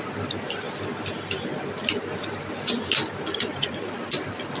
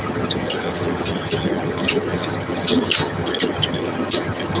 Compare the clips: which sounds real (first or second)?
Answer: first